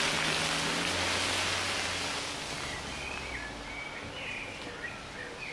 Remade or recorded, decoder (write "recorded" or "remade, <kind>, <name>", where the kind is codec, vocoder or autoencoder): recorded